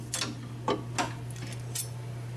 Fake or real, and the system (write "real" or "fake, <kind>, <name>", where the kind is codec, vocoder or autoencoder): real